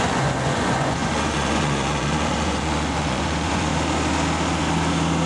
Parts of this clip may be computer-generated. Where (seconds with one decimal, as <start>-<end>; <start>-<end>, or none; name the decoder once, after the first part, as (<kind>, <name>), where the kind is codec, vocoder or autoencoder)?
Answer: 0.0-3.7 (vocoder, Vocos)